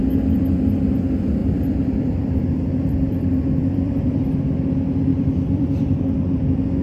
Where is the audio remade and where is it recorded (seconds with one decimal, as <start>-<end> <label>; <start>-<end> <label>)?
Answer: 0.0-1.4 recorded; 1.4-4.2 remade; 4.2-5.1 recorded; 5.1-6.0 remade; 6.0-6.8 recorded